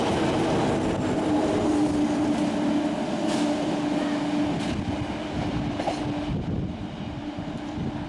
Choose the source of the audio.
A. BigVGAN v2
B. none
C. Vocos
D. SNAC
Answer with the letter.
B